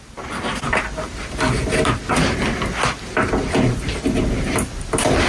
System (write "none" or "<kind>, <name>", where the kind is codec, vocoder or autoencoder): none